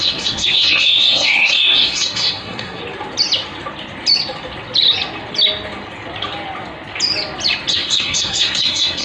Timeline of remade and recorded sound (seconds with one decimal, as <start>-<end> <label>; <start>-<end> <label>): 0.0-2.8 remade; 2.8-7.7 recorded; 7.7-9.0 remade